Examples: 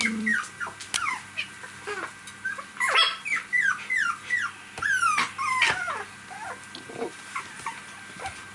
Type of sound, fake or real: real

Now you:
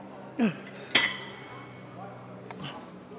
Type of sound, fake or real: real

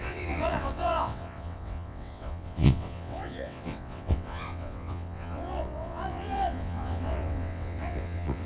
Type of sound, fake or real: fake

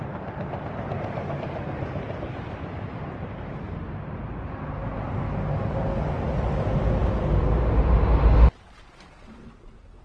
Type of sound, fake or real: real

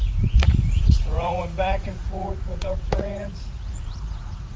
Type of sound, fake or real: fake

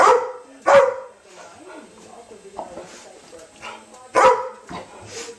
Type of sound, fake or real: real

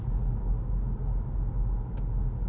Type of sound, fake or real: real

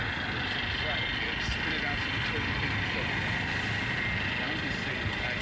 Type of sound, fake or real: real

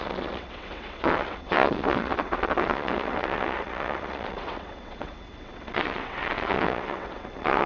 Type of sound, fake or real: fake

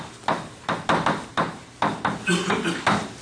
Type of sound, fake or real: real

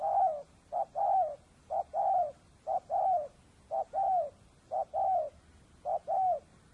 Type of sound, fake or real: real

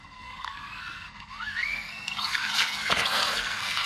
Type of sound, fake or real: fake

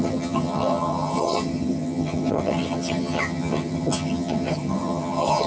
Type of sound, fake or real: fake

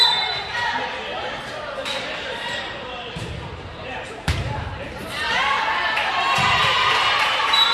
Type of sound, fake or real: fake